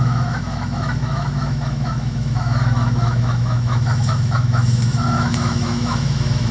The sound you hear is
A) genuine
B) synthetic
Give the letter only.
B